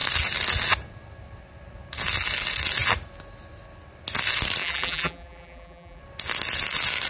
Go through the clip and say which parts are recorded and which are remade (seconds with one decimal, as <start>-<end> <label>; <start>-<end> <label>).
0.0-4.6 recorded; 4.6-6.0 remade; 6.0-7.1 recorded